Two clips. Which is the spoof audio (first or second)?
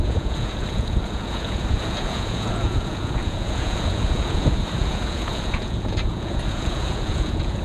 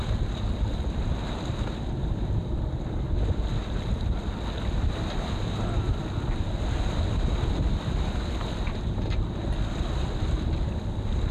first